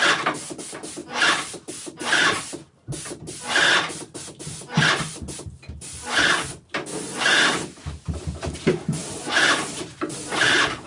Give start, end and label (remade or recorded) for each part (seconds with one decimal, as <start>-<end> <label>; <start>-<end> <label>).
0.0-1.0 recorded; 1.0-3.4 remade; 3.4-9.0 recorded; 9.0-10.0 remade; 10.0-10.9 recorded